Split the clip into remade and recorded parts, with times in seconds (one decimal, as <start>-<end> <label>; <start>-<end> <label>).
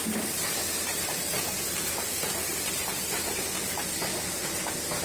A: 0.0-0.5 remade; 0.5-0.9 recorded; 0.9-3.9 remade; 3.9-5.0 recorded